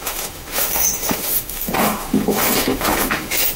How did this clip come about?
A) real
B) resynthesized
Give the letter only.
B